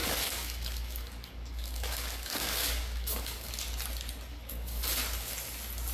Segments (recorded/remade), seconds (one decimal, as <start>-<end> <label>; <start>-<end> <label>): 0.0-3.5 remade; 3.5-4.3 recorded; 4.3-4.8 remade; 4.8-5.9 recorded